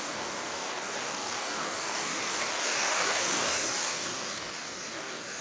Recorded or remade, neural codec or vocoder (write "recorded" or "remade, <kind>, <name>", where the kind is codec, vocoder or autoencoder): remade, codec, DAC